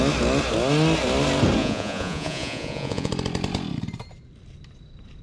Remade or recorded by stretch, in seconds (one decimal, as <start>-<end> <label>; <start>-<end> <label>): 0.0-1.6 recorded; 1.6-3.1 remade; 3.1-5.2 recorded